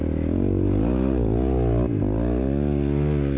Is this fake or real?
real